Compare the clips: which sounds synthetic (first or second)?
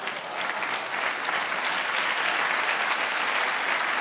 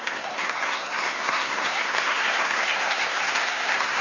second